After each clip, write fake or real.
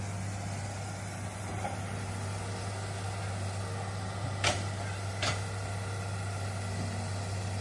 real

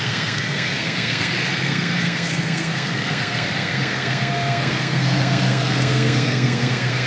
fake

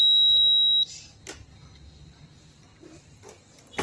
real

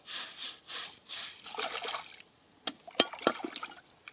real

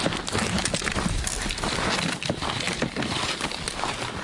real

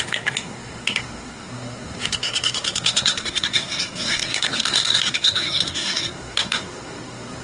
fake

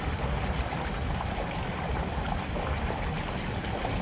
real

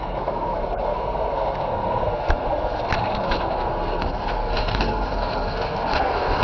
fake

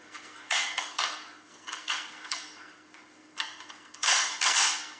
fake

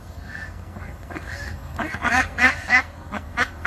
fake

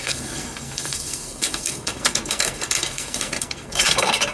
fake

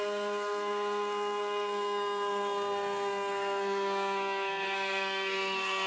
fake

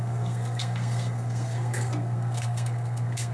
fake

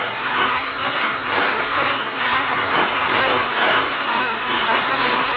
fake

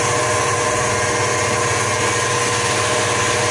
real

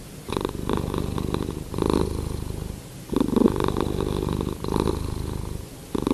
real